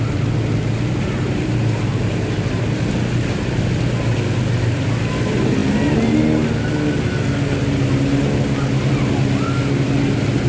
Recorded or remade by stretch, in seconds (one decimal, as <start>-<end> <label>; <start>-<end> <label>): 0.0-10.5 recorded